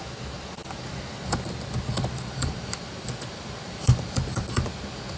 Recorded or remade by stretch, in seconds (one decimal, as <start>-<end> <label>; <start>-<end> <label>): 0.0-5.2 recorded